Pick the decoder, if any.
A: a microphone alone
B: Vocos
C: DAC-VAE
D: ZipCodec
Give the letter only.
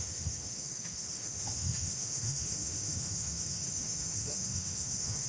C